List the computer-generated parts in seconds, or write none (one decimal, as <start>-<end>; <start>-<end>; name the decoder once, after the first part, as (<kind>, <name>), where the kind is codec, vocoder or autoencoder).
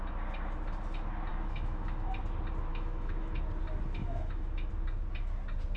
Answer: 1.3-2.1 (autoencoder, DAC-VAE); 2.7-3.4; 4.0-4.7